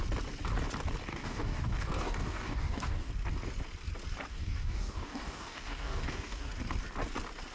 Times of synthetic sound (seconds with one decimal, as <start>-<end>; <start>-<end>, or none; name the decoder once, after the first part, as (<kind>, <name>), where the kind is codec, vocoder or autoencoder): 1.1-3.1 (codec, DAC); 4.3-6.5